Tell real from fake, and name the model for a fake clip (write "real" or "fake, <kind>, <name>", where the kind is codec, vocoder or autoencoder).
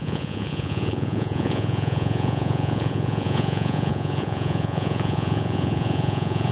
fake, vocoder, Vocos